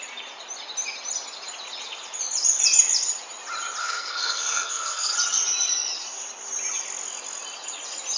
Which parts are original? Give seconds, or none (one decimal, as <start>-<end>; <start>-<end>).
0.0-3.8; 5.1-8.2